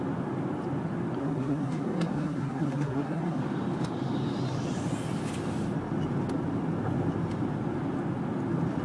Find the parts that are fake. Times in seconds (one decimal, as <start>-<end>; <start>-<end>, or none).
1.2-3.4